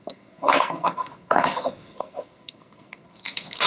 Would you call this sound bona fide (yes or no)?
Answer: no